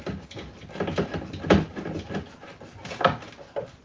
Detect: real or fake real